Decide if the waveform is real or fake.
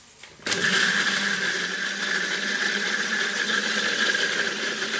real